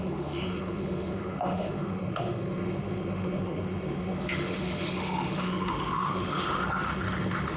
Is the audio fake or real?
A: fake